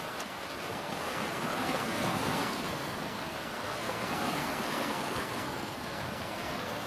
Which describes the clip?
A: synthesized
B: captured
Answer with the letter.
A